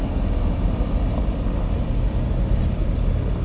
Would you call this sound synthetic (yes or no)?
no